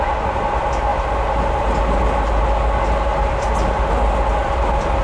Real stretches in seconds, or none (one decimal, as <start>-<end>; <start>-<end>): 0.0-4.4